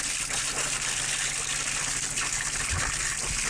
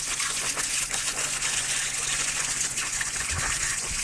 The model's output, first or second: second